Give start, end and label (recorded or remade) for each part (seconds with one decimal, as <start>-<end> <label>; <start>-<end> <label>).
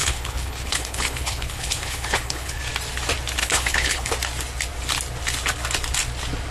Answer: 0.0-2.6 remade; 2.6-3.4 recorded; 3.4-4.1 remade; 4.1-6.5 recorded